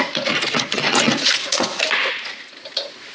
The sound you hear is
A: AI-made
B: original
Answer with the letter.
A